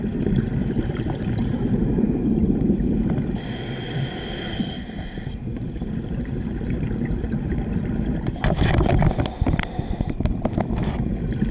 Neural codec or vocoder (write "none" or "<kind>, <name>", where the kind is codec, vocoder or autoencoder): vocoder, BigVGAN v2